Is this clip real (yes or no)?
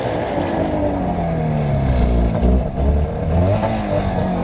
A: yes